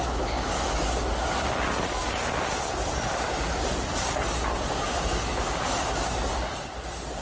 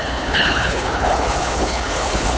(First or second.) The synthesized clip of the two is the second